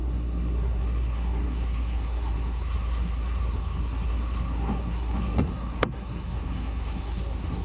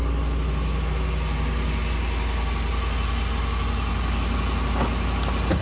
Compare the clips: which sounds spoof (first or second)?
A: first